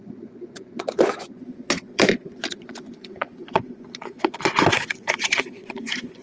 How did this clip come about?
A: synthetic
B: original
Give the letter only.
A